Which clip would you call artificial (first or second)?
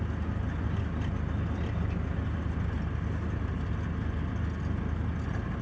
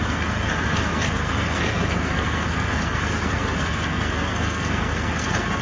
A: second